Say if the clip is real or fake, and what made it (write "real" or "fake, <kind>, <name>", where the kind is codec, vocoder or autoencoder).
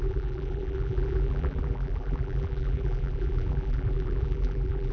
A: fake, vocoder, BigVGAN v2